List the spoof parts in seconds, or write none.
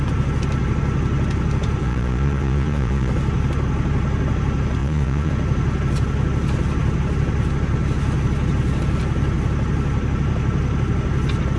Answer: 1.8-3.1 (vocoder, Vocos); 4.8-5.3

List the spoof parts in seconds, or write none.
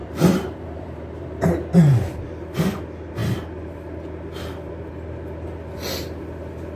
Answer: 0.0-2.1 (vocoder, BigVGAN v2)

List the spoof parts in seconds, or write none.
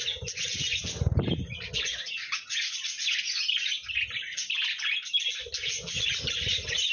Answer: none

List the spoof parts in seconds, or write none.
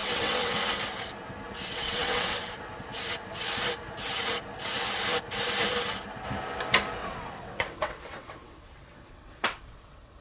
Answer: 0.0-0.6 (vocoder, WaveNeXt); 1.7-2.5; 7.0-10.2